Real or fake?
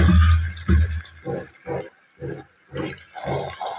real